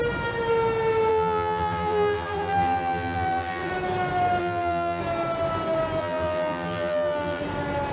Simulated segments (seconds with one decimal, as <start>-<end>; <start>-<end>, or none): 1.1-3.7; 4.4-5.0; 6.0-7.4